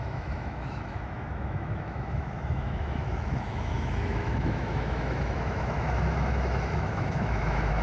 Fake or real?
fake